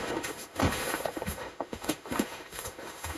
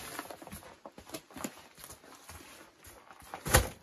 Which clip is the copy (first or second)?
first